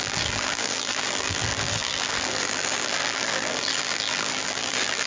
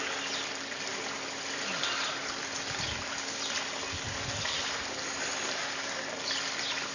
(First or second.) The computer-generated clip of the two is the first